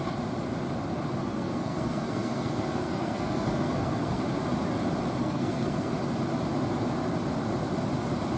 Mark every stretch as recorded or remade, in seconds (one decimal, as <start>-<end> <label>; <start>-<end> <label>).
0.0-1.2 recorded; 1.2-4.2 remade; 4.2-5.2 recorded; 5.2-5.9 remade; 5.9-8.4 recorded